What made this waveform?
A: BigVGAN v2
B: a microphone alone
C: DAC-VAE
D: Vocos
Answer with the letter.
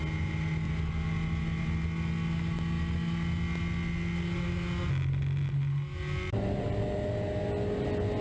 B